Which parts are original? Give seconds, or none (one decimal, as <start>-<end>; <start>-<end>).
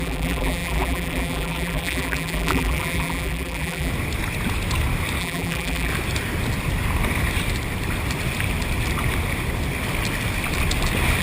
3.9-5.2; 5.9-11.2